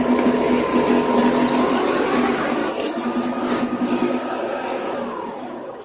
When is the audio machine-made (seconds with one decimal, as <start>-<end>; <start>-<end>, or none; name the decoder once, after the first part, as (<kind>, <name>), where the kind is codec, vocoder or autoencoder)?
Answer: 0.0-0.7 (codec, DAC); 1.7-2.6; 3.4-5.8